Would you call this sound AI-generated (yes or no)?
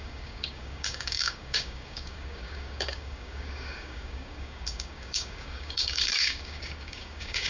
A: yes